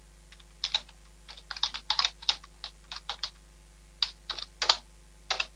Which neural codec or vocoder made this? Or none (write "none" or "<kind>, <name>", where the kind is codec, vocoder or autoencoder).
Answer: none